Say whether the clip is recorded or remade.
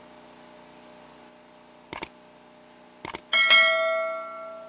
recorded